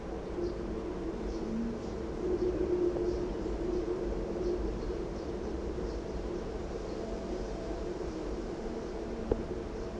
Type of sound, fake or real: fake